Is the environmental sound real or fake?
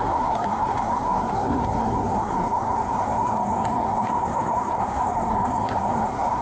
fake